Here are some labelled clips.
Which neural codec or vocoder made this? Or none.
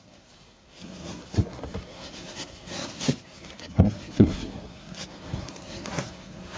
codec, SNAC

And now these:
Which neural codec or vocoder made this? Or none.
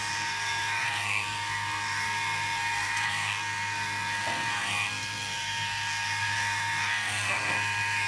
codec, SNAC